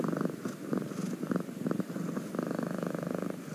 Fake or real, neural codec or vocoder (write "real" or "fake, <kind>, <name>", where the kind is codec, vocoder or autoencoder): real